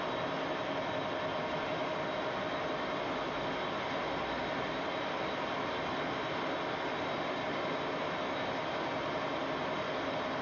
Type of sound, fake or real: real